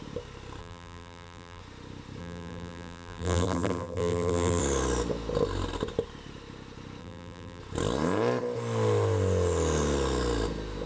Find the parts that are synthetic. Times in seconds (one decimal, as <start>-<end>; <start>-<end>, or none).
0.6-1.6; 2.2-4.6; 7.0-7.6